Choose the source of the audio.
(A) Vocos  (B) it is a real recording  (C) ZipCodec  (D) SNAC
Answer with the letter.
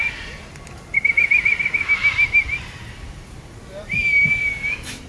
B